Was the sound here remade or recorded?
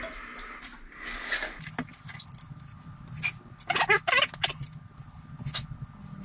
recorded